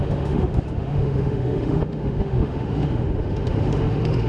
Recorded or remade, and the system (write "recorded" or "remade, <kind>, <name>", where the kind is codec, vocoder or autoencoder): remade, autoencoder, DAC-VAE